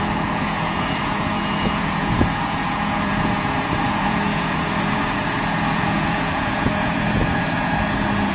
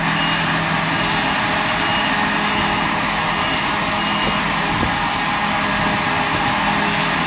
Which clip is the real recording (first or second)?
second